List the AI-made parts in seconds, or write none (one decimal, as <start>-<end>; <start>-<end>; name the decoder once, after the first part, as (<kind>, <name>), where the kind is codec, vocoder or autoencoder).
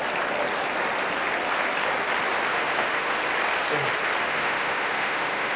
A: 2.5-3.2 (autoencoder, DAC-VAE); 4.2-5.6